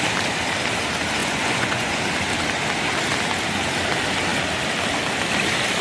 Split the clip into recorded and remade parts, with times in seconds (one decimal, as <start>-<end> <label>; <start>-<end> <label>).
0.0-1.2 recorded; 1.2-2.0 remade; 2.0-5.8 recorded